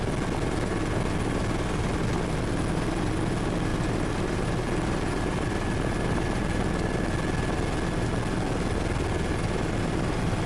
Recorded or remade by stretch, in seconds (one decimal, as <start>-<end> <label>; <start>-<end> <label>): 0.0-3.7 recorded; 3.7-6.1 remade; 6.1-10.5 recorded